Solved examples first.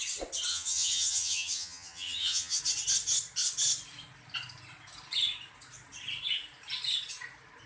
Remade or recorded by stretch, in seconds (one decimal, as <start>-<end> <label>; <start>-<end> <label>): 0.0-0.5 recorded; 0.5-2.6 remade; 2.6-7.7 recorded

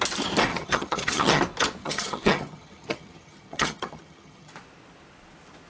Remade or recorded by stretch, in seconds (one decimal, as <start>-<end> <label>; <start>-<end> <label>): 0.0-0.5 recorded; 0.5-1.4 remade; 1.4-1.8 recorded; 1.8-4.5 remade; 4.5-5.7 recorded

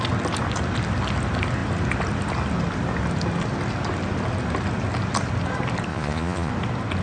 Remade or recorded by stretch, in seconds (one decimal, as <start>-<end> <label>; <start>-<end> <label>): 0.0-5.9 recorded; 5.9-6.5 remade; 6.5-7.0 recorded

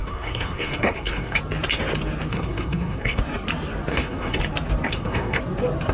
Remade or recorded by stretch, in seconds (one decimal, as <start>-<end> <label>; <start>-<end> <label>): 0.0-1.4 remade; 1.4-2.3 recorded; 2.3-3.2 remade; 3.2-3.9 recorded; 3.9-4.4 remade; 4.4-4.9 recorded; 4.9-5.4 remade; 5.4-5.9 recorded

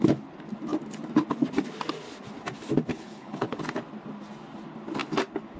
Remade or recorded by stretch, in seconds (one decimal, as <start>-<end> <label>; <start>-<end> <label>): 0.0-2.9 recorded; 2.9-3.6 remade; 3.6-5.6 recorded

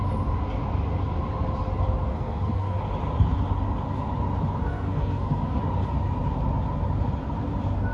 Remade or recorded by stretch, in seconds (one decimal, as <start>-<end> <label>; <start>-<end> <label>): 0.0-2.1 recorded; 2.1-2.8 remade; 2.8-4.6 recorded; 4.6-5.6 remade; 5.6-7.9 recorded

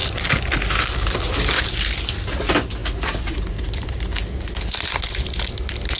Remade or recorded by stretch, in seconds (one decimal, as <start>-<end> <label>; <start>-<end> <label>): 0.0-6.0 recorded